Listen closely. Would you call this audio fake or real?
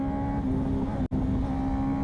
real